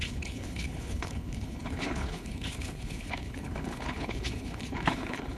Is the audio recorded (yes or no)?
no